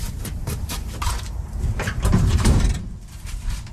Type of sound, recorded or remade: remade